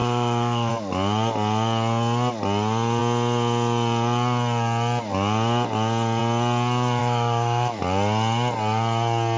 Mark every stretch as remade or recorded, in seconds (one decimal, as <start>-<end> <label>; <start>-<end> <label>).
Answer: 0.0-0.7 remade; 0.7-7.0 recorded; 7.0-7.8 remade; 7.8-9.4 recorded